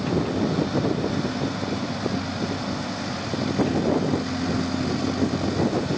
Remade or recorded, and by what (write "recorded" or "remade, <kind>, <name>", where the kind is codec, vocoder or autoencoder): recorded